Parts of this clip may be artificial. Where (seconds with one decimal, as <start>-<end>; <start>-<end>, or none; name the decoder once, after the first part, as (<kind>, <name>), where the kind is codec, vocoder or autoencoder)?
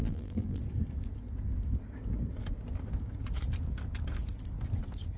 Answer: 0.0-0.6 (vocoder, BigVGAN v2)